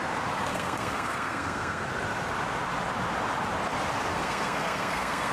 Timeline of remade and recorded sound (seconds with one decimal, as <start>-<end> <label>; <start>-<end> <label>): 0.0-0.5 recorded; 0.5-1.9 remade; 1.9-4.1 recorded; 4.1-5.3 remade

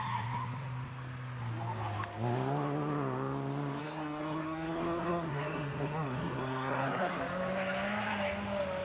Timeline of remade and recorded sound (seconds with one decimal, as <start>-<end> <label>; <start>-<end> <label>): 0.0-3.8 recorded; 3.8-7.2 remade; 7.2-8.8 recorded

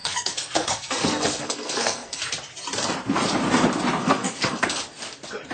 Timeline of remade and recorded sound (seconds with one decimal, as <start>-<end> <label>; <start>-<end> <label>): 0.0-2.2 remade; 2.2-4.0 recorded; 4.0-4.8 remade; 4.8-5.5 recorded

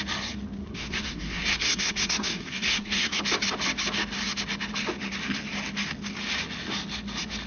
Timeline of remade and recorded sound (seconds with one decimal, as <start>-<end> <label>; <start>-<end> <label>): 0.0-0.6 recorded; 0.6-3.2 remade; 3.2-7.5 recorded

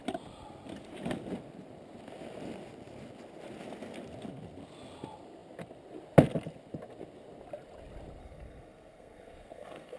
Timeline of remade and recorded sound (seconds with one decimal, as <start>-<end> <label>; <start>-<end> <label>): 0.0-8.2 recorded; 8.2-10.0 remade